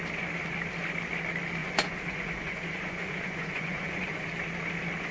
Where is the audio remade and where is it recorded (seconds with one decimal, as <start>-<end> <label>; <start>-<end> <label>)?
0.0-1.6 recorded; 1.6-4.3 remade; 4.3-5.1 recorded